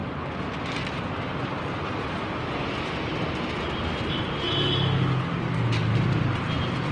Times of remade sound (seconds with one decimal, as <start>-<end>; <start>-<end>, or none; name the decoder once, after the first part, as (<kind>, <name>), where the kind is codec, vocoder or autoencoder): none